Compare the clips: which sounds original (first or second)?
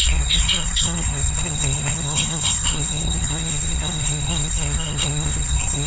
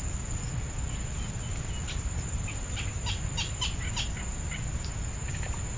second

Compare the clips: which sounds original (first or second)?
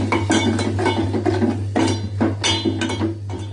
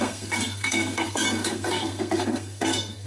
first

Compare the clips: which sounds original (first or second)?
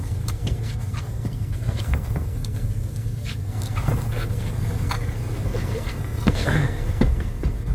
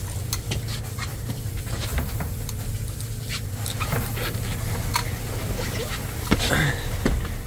second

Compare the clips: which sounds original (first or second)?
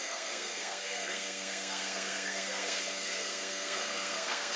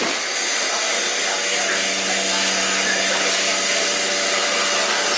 second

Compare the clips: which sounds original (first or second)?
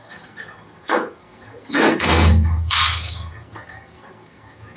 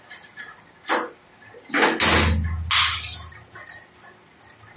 second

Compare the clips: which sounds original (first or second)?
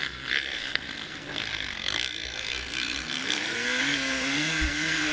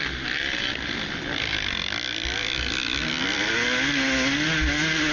second